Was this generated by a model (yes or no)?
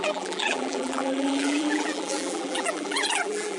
yes